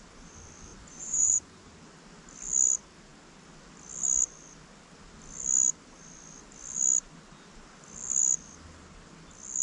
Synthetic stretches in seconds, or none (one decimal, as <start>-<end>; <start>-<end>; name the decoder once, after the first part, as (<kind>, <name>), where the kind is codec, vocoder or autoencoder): 0.7-1.7 (vocoder, Vocos)